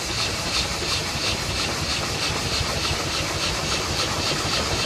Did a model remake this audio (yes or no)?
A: no